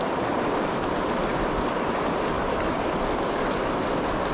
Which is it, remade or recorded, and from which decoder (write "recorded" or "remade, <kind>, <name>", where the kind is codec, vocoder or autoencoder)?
remade, vocoder, BigVGAN v2